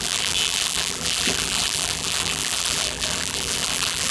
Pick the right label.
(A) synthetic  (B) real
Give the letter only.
A